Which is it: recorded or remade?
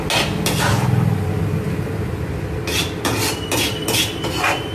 recorded